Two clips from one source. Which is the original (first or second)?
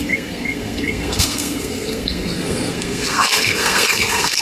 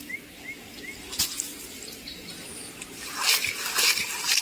second